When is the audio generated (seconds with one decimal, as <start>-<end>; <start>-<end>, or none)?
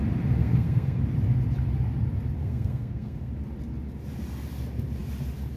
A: 0.4-1.0; 2.4-3.3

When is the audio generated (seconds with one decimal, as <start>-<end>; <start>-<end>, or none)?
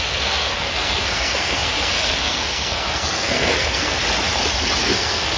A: 0.0-4.0; 4.8-5.4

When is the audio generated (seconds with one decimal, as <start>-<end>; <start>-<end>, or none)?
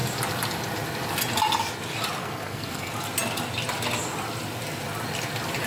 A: 2.2-2.9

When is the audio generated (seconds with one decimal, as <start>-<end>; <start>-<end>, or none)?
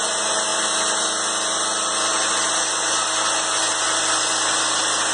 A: none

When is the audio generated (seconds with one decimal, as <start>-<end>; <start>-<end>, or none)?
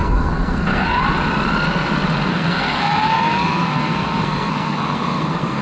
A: 0.0-1.0; 2.3-5.6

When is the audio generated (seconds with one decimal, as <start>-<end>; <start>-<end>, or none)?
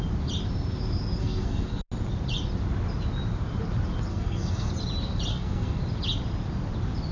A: 1.2-1.8; 4.1-4.7; 5.3-5.8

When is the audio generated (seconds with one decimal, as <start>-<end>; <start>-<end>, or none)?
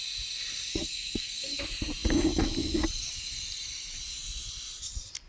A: 0.7-1.6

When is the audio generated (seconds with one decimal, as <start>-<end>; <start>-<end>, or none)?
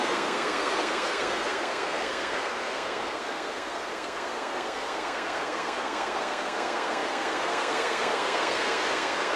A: 0.0-9.4